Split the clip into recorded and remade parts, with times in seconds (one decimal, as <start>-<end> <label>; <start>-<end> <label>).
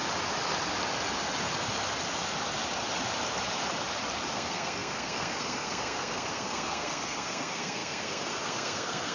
0.0-4.3 recorded; 4.3-9.1 remade